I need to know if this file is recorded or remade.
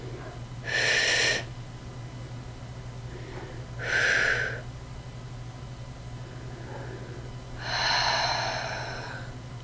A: recorded